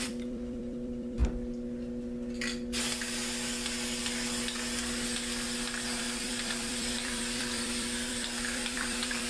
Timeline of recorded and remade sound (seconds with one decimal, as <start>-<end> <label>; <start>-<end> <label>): 0.0-1.2 remade; 1.2-6.0 recorded; 6.0-9.3 remade